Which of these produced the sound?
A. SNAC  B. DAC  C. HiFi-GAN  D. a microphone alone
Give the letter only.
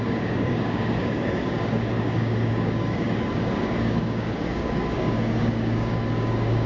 B